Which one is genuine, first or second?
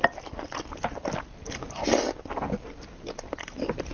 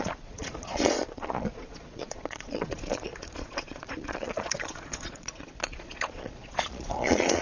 first